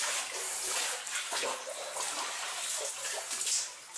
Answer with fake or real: real